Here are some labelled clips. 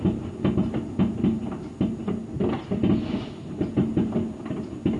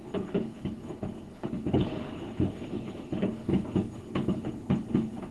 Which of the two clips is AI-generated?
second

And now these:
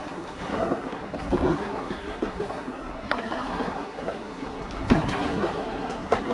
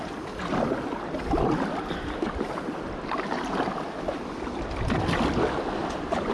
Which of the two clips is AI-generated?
first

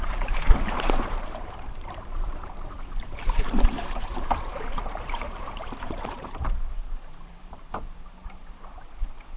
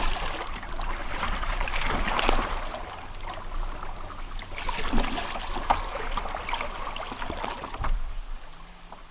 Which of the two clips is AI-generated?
first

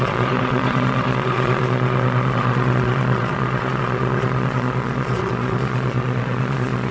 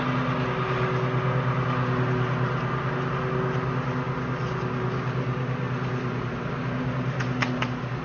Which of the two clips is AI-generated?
first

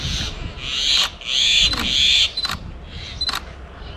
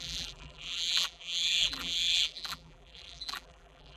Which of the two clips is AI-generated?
second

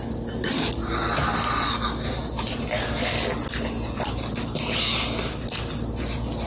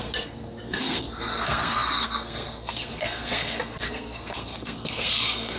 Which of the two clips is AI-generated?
second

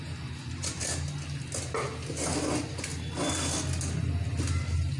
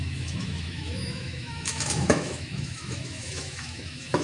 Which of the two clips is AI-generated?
second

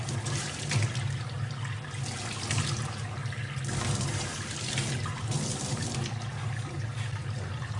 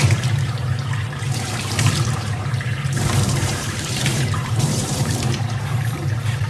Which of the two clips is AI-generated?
second